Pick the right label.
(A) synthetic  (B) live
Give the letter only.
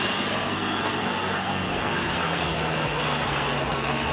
A